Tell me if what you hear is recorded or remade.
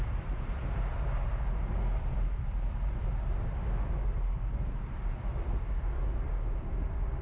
remade